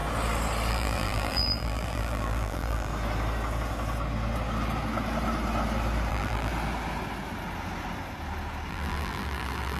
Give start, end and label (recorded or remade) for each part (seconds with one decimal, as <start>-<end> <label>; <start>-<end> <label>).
0.0-0.7 recorded; 0.7-2.9 remade; 2.9-6.1 recorded; 6.1-6.5 remade; 6.5-8.7 recorded; 8.7-9.8 remade